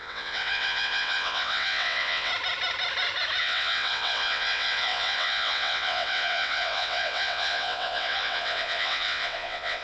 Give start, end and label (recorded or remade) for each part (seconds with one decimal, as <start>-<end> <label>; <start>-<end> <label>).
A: 0.0-2.3 remade; 2.3-3.4 recorded; 3.4-9.8 remade